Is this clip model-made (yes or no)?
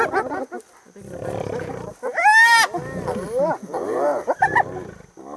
no